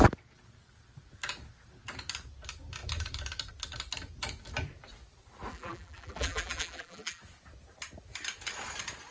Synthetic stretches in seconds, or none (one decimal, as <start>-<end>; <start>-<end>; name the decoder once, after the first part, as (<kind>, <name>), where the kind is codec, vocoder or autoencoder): 5.5-7.2 (vocoder, BigVGAN v2)